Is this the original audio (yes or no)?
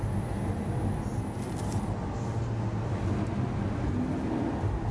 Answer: yes